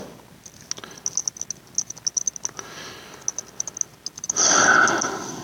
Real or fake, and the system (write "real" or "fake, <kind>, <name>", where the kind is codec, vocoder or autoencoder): real